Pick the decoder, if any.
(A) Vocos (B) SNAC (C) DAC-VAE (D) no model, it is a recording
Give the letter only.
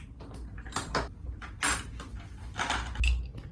D